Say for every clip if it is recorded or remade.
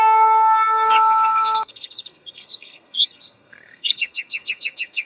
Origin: remade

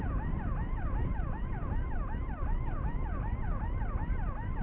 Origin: recorded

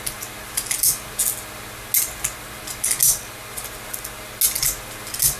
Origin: recorded